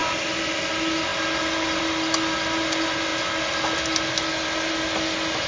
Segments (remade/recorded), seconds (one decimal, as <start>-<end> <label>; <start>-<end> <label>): 0.0-5.5 recorded